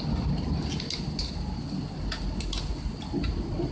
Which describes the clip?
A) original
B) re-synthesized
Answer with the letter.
A